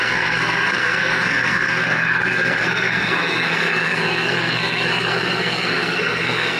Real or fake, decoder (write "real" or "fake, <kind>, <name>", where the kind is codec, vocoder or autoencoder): fake, codec, SNAC